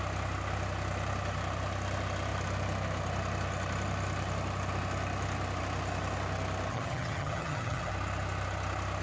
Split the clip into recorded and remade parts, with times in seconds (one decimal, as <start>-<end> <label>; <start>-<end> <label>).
0.0-6.7 recorded; 6.7-7.9 remade; 7.9-9.0 recorded